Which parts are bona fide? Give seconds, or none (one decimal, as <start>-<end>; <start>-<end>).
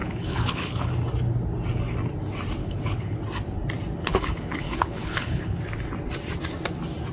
0.9-2.6; 3.2-4.0; 5.6-7.1